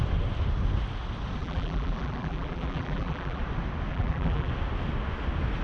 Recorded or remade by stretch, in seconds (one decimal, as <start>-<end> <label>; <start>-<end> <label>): 0.0-1.4 recorded; 1.4-3.4 remade; 3.4-3.9 recorded; 3.9-4.5 remade; 4.5-5.6 recorded